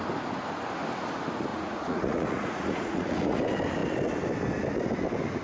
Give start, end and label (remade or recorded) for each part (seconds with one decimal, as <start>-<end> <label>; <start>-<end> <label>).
0.0-1.5 recorded; 1.5-3.4 remade; 3.4-5.4 recorded